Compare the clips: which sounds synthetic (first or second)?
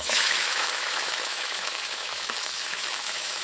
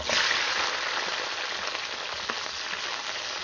first